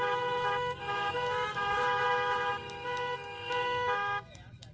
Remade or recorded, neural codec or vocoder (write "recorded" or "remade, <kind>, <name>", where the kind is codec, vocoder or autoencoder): remade, autoencoder, DAC-VAE